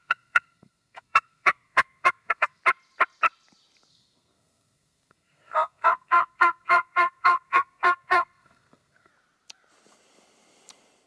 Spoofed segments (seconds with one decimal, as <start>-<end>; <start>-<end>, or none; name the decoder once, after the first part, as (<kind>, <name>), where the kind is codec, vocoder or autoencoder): 0.0-2.6 (codec, SNAC); 3.9-9.1